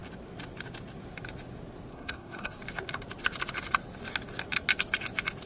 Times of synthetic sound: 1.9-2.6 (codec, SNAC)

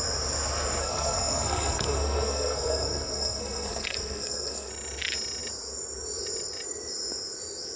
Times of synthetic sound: 0.8-4.7 (codec, SNAC)

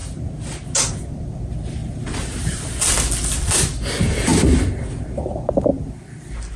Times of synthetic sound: 1.8-2.7 (vocoder, BigVGAN v2)

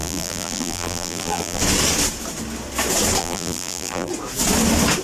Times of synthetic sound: 0.0-1.6 (vocoder, BigVGAN v2); 3.2-4.1

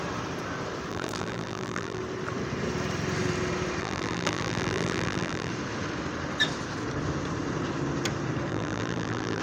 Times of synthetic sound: 0.9-2.0 (vocoder, BigVGAN v2); 3.8-5.5; 8.5-9.4

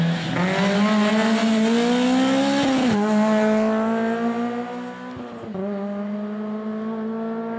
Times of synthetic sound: none

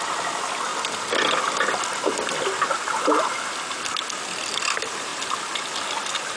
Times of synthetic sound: none